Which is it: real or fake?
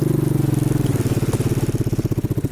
real